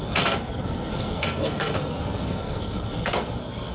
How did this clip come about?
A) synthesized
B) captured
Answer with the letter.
A